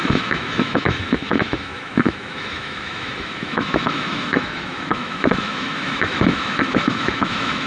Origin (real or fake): fake